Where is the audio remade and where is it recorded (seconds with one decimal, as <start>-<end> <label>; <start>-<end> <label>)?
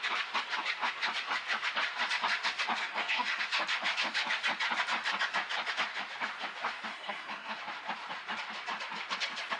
0.0-2.8 recorded; 2.8-3.4 remade; 3.4-6.9 recorded; 6.9-7.6 remade; 7.6-9.6 recorded